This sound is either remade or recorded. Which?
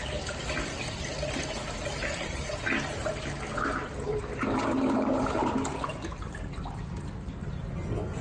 recorded